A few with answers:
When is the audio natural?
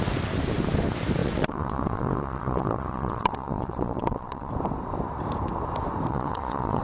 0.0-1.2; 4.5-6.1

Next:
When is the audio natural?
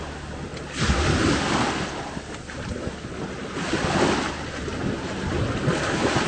0.0-6.3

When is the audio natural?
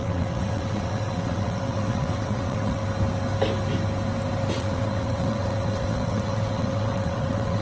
2.8-4.5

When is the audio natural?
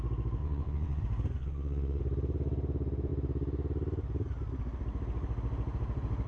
0.0-0.4; 1.0-1.4; 2.0-6.3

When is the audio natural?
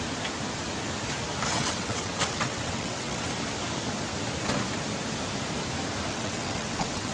0.0-1.5; 3.3-6.1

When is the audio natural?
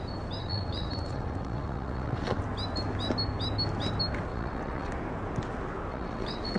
0.0-0.4; 2.4-4.3; 4.9-5.9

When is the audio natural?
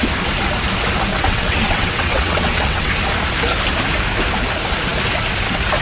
0.0-1.1; 2.9-5.8